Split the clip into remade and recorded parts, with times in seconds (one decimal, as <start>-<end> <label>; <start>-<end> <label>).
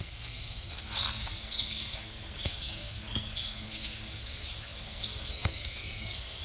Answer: 0.0-6.4 remade